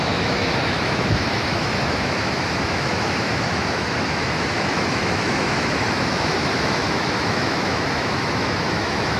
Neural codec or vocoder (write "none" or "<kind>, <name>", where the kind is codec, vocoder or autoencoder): autoencoder, DAC-VAE